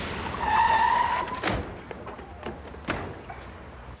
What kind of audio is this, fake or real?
real